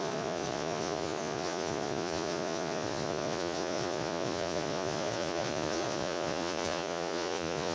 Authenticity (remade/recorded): remade